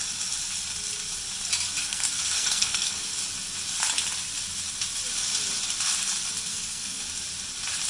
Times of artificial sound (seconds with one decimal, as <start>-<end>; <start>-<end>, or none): 1.8-3.0; 6.5-7.0